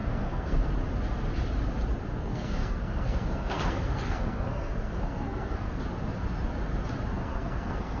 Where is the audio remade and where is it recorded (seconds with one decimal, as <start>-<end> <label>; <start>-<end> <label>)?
0.0-0.7 remade; 0.7-2.1 recorded; 2.1-5.8 remade; 5.8-7.2 recorded; 7.2-8.0 remade